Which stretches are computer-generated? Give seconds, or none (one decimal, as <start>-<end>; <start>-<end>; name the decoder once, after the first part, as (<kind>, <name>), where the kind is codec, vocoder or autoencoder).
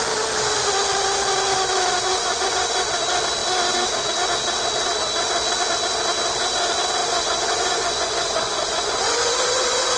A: 2.1-3.0 (vocoder, Vocos); 7.0-10.0